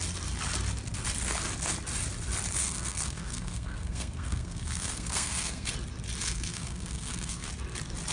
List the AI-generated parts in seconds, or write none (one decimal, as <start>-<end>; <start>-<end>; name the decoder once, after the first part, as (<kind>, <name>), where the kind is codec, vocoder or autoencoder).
2.6-5.7 (codec, SNAC); 6.2-7.5